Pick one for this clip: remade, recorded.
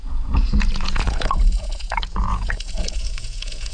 remade